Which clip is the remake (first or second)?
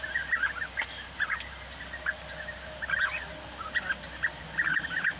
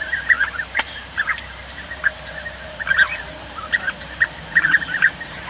second